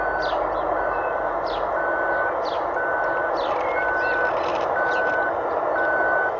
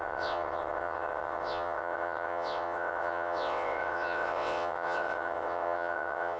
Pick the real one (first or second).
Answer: first